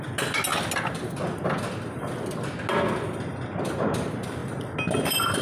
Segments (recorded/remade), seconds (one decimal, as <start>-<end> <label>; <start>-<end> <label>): 0.0-5.4 recorded